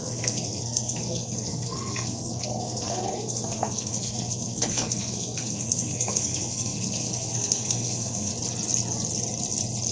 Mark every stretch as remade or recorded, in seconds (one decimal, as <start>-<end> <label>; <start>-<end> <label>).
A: 0.0-8.3 remade; 8.3-9.9 recorded